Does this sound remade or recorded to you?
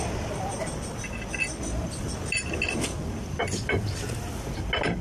recorded